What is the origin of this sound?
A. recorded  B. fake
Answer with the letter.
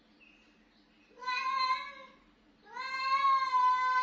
A